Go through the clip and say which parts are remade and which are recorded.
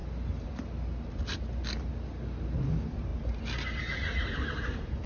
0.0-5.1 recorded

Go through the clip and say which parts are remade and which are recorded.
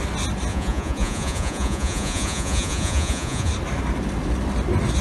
0.0-0.5 recorded; 0.5-3.5 remade; 3.5-5.0 recorded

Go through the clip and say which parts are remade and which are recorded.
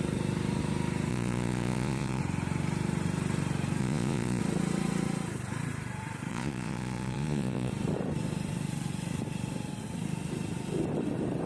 0.0-1.1 recorded; 1.1-2.2 remade; 2.2-3.8 recorded; 3.8-4.4 remade; 4.4-6.3 recorded; 6.3-7.7 remade; 7.7-11.5 recorded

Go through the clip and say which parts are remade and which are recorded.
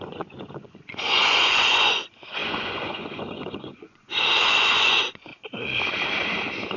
0.0-5.3 remade; 5.3-6.8 recorded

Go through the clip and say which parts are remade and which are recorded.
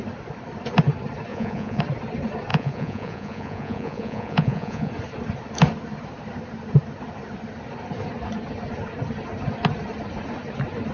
0.0-1.3 recorded; 1.3-1.8 remade; 1.8-2.5 recorded; 2.5-4.9 remade; 4.9-10.9 recorded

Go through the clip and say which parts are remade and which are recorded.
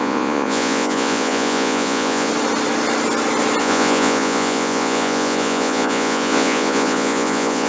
0.0-2.3 remade; 2.3-3.6 recorded; 3.6-7.7 remade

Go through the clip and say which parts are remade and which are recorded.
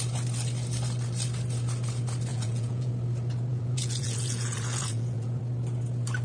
0.0-2.3 recorded; 2.3-2.9 remade; 2.9-3.5 recorded; 3.5-5.4 remade; 5.4-6.2 recorded